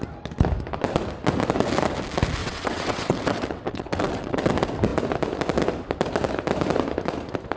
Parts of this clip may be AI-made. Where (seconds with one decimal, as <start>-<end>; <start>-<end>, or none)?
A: 2.4-4.5